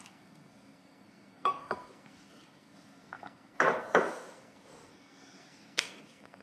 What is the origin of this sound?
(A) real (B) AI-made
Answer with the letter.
B